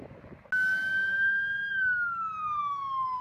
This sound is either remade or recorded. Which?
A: recorded